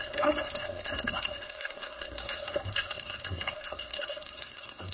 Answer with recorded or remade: remade